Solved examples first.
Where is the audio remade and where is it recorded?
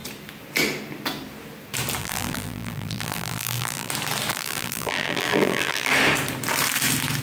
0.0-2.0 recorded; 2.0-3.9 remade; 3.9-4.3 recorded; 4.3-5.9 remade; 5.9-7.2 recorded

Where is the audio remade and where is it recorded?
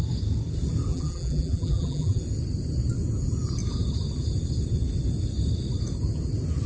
0.0-0.9 recorded; 0.9-2.2 remade; 2.2-6.7 recorded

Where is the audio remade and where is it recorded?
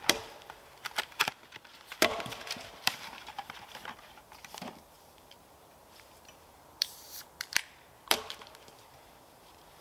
0.0-1.3 remade; 1.3-2.0 recorded; 2.0-9.8 remade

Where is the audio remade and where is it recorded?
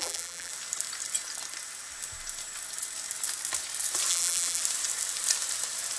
0.0-0.5 remade; 0.5-4.1 recorded; 4.1-4.6 remade; 4.6-6.0 recorded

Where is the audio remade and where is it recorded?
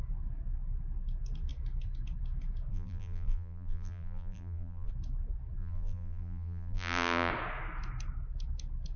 0.0-2.7 recorded; 2.7-4.9 remade; 4.9-5.6 recorded; 5.6-7.3 remade; 7.3-9.0 recorded